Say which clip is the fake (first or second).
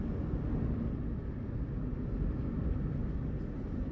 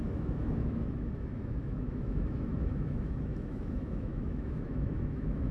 second